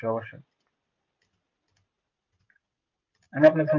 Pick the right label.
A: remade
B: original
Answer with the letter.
B